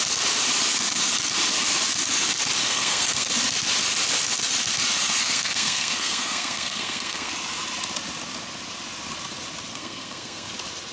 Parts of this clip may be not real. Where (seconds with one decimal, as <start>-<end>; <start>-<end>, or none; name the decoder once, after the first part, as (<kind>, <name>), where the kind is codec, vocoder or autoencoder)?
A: 2.6-3.3 (codec, SNAC); 5.2-7.3; 9.7-10.5